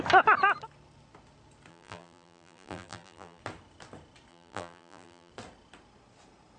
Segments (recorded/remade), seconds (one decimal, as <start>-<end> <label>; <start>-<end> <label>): 0.0-1.7 recorded; 1.7-3.4 remade; 3.4-4.3 recorded; 4.3-5.3 remade; 5.3-6.6 recorded